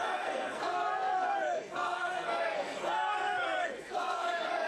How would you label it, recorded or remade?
remade